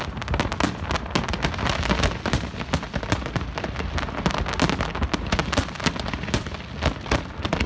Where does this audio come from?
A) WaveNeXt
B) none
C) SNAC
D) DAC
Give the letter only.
B